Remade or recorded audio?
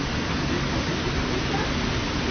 recorded